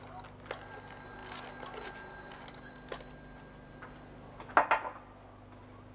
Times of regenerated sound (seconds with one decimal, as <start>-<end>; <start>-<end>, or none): none